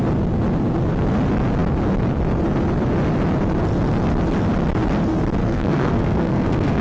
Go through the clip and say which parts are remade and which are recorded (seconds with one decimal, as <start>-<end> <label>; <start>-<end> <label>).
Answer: 0.0-5.4 recorded; 5.4-6.8 remade